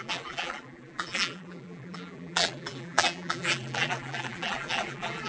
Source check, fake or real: fake